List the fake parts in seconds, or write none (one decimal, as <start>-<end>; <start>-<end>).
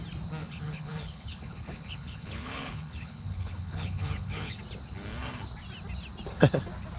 0.4-4.6